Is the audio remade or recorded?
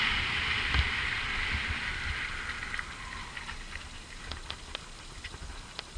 recorded